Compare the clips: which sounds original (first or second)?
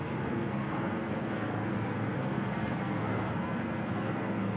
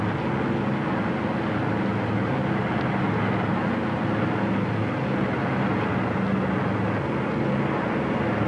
second